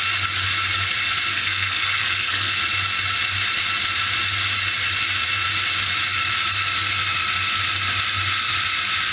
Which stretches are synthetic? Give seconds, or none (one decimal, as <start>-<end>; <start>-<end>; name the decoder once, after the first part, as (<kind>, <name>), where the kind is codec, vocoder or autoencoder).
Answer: 1.3-2.5 (codec, SNAC)